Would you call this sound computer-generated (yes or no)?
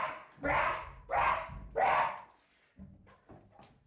no